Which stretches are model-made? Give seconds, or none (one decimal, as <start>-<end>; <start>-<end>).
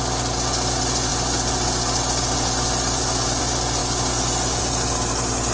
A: none